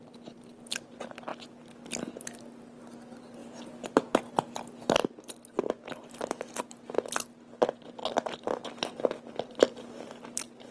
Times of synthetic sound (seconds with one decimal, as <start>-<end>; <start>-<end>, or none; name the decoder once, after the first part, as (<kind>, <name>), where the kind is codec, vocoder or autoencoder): none

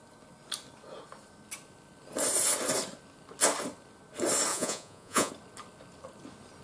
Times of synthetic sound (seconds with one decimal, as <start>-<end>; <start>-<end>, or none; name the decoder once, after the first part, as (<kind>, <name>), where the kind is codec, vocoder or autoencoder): 4.5-5.3 (vocoder, Vocos)

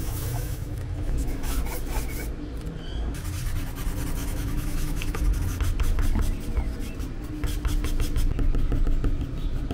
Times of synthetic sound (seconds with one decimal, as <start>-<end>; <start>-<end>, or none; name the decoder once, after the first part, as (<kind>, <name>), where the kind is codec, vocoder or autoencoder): 0.0-1.6 (autoencoder, DAC-VAE); 4.2-5.2

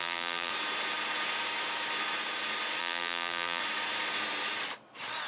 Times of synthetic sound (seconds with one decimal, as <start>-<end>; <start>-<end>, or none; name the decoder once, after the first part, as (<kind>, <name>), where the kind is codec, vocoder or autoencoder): 0.0-0.5 (vocoder, BigVGAN v2); 2.8-3.6

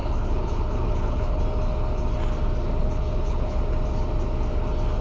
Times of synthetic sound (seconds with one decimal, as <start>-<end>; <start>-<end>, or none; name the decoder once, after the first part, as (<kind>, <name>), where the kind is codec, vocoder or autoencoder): 0.0-1.4 (codec, HILCodec); 2.8-3.6

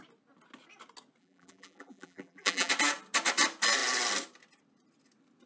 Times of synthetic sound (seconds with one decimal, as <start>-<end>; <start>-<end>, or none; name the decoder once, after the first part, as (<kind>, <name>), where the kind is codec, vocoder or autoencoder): 1.2-2.7 (vocoder, BigVGAN v2)

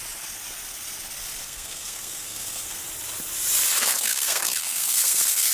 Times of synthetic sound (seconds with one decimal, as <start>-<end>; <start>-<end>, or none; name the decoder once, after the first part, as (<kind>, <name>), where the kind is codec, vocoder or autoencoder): 1.4-2.8 (codec, SNAC); 3.8-5.5